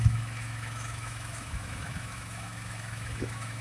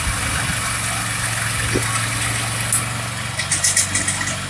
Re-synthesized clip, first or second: first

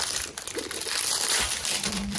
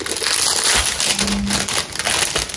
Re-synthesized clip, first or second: first